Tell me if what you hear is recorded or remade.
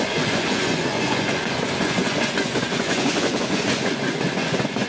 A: remade